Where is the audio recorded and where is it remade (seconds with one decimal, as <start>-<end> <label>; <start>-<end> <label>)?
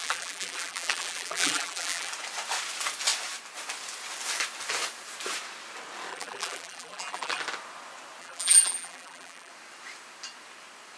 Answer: 0.0-2.1 remade; 2.1-6.1 recorded; 6.1-7.4 remade; 7.4-8.2 recorded; 8.2-9.5 remade; 9.5-11.0 recorded